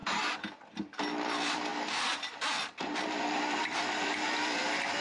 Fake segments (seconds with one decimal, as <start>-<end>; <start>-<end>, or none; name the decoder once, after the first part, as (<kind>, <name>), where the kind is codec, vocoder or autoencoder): 0.7-5.0 (vocoder, BigVGAN v2)